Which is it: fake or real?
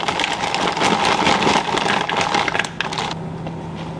real